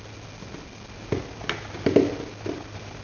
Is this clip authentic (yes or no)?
yes